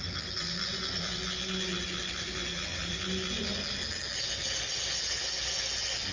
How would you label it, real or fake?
real